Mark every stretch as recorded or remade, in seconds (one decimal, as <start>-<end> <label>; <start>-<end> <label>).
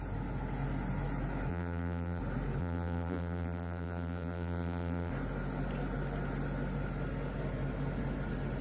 0.0-1.5 recorded; 1.5-2.2 remade; 2.2-2.6 recorded; 2.6-5.1 remade; 5.1-8.6 recorded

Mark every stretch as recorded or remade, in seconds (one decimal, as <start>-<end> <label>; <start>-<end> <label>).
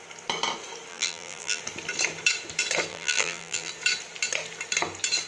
0.0-0.9 recorded; 0.9-1.6 remade; 1.6-2.9 recorded; 2.9-3.7 remade; 3.7-5.3 recorded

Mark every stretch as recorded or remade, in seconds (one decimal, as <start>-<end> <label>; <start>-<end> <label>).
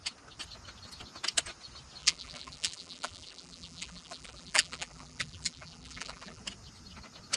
0.0-2.0 recorded; 2.0-6.4 remade; 6.4-7.4 recorded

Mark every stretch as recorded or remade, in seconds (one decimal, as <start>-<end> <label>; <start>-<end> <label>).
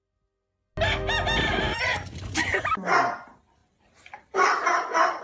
0.0-3.6 recorded; 3.6-5.2 remade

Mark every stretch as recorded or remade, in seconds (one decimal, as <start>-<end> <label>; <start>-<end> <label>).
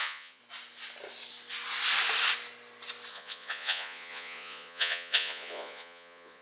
0.0-0.4 remade; 0.4-3.1 recorded; 3.1-6.4 remade